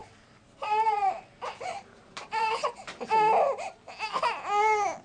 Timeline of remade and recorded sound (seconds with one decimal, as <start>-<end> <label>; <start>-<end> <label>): 0.0-3.0 remade; 3.0-5.0 recorded